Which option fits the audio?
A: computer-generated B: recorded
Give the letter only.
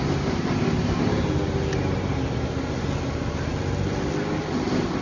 B